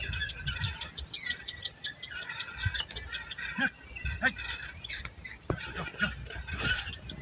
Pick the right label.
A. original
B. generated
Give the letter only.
A